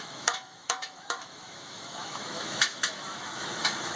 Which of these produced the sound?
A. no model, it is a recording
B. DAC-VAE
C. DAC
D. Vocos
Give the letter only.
B